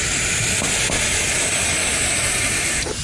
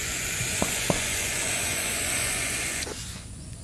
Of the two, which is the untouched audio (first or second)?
first